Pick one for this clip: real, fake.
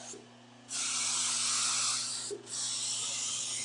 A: real